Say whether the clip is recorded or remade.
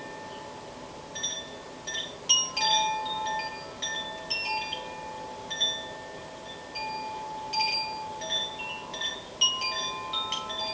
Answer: recorded